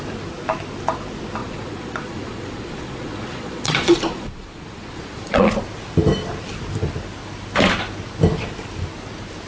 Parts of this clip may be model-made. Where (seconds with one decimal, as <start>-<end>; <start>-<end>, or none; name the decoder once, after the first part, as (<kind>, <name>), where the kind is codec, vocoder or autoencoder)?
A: 1.4-5.5 (vocoder, Vocos)